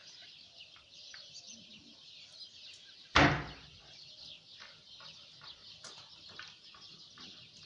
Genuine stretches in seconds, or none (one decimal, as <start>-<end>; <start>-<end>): 0.0-7.7